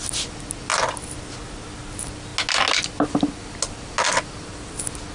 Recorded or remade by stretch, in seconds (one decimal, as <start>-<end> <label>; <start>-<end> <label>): 0.0-5.1 recorded